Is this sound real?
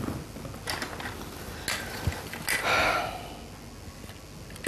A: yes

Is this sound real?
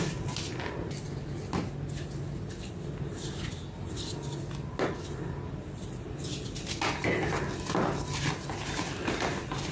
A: yes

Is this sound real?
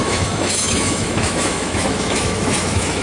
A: no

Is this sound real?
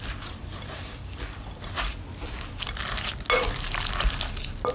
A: yes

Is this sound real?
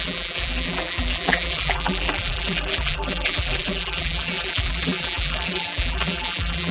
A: no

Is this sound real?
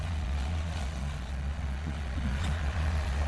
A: no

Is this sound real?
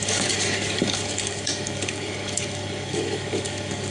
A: no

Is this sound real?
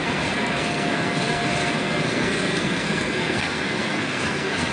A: no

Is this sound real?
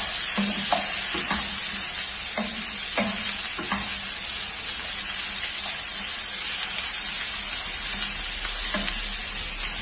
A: yes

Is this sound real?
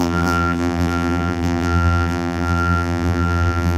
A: no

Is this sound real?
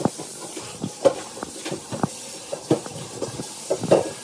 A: yes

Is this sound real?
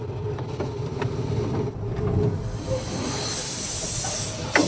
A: yes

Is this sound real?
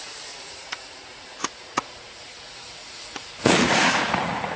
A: no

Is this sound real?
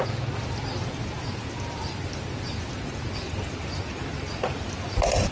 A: yes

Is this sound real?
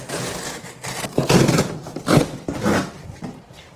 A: yes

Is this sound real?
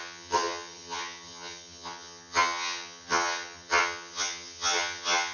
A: no